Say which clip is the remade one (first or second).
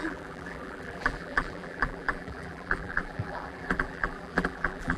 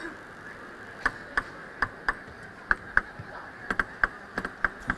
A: first